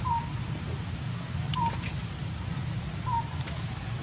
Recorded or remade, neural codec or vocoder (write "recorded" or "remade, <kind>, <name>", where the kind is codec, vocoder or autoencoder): recorded